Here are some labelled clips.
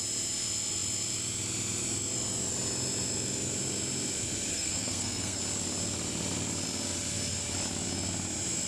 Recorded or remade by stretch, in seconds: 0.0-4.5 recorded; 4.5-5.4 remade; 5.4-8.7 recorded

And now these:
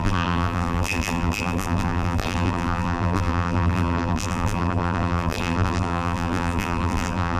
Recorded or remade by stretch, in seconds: 0.0-7.4 remade

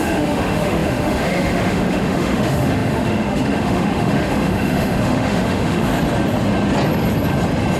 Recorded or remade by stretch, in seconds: 0.0-5.9 remade; 5.9-7.8 recorded

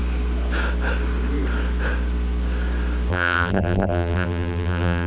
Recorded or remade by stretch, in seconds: 0.0-3.1 recorded; 3.1-5.1 remade

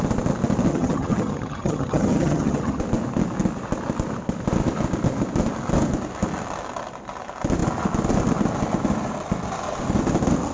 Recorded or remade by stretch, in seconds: 0.0-0.7 recorded; 0.7-2.8 remade; 2.8-10.5 recorded

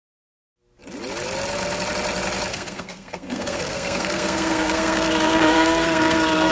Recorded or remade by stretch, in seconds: 0.0-2.5 recorded; 2.5-6.5 remade

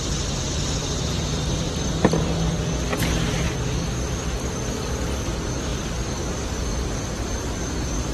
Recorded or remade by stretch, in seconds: 0.0-5.7 recorded; 5.7-8.1 remade

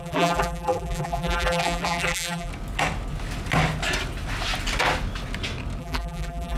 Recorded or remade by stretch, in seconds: 0.0-2.5 remade; 2.5-5.8 recorded; 5.8-6.6 remade